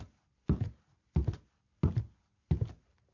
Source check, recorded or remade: recorded